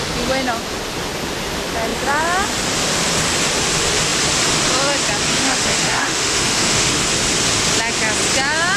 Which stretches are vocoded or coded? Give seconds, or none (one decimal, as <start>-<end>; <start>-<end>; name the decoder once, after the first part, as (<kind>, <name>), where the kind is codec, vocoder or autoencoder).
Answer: 5.3-6.9 (autoencoder, DAC-VAE)